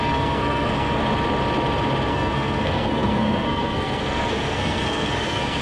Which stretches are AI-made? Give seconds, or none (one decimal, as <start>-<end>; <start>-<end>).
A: 0.0-1.0; 2.1-5.6